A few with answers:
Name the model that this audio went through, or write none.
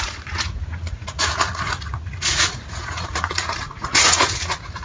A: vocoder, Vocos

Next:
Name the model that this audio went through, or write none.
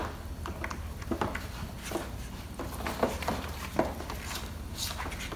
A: none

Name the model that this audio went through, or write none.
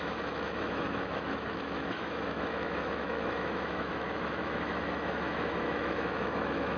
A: autoencoder, DAC-VAE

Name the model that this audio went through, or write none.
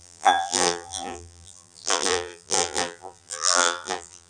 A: vocoder, BigVGAN v2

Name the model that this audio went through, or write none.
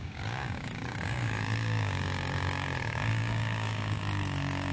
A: codec, DAC